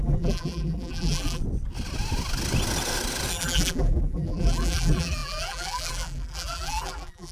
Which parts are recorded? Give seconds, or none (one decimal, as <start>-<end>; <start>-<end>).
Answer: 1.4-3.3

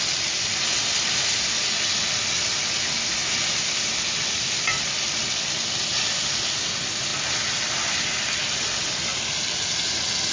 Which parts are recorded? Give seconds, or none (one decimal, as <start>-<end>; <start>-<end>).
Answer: 0.0-3.2; 6.3-10.3

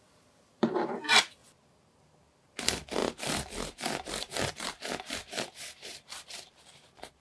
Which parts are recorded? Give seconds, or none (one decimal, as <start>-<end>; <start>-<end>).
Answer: 1.4-2.6

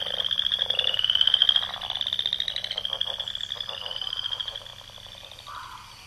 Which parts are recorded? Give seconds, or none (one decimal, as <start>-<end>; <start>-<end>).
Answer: 1.4-3.8; 4.7-6.1